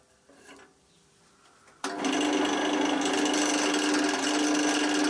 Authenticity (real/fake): real